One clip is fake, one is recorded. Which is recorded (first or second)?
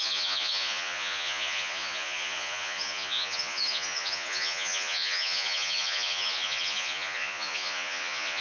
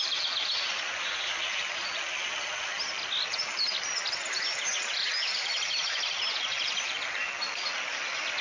second